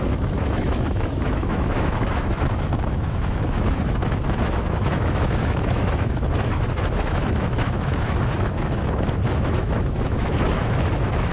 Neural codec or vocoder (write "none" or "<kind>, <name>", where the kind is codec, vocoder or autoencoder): autoencoder, DAC-VAE